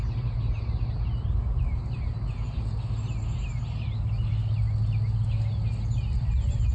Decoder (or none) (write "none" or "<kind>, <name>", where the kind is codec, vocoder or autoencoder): none